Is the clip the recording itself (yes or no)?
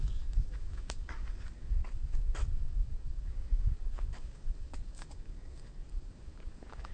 no